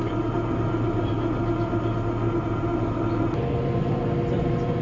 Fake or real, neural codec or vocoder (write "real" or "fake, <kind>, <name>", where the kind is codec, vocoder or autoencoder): real